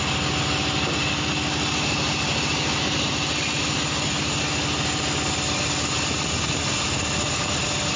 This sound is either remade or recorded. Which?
recorded